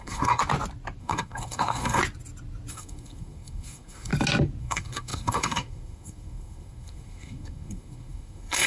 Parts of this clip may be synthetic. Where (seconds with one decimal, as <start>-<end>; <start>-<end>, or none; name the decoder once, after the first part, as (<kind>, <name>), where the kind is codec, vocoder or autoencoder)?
0.0-0.4 (codec, SNAC); 1.0-2.0; 2.7-4.1; 4.6-8.7